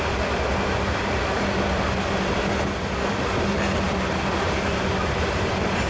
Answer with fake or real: real